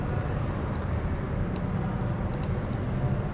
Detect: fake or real real